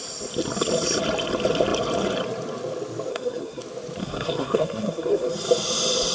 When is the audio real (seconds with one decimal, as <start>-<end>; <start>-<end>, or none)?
0.0-3.1; 3.6-4.0; 5.3-6.1